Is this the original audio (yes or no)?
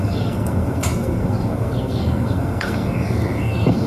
no